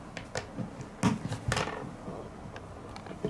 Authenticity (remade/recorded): recorded